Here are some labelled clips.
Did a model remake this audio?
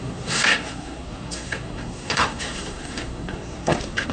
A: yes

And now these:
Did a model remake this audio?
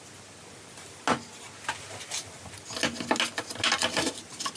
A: no